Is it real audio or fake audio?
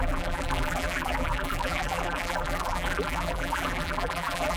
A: fake